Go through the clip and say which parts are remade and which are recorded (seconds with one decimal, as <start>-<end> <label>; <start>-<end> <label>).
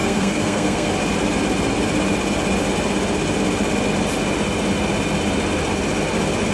0.0-0.9 remade; 0.9-6.5 recorded